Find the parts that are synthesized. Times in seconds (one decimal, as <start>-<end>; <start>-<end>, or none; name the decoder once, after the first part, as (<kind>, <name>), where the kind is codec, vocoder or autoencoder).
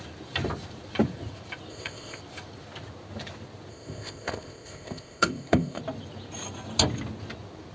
1.7-2.2 (codec, ZipCodec); 3.7-5.8